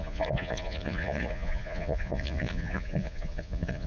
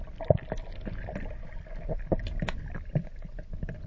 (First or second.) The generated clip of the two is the first